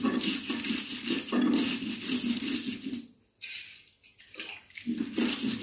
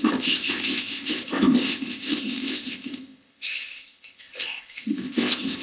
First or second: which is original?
first